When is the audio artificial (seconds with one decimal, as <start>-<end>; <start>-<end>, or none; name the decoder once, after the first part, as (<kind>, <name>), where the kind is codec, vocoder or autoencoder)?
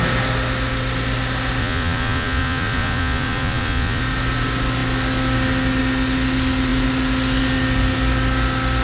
1.6-4.0 (vocoder, Vocos)